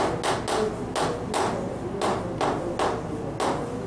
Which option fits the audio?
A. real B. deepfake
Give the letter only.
A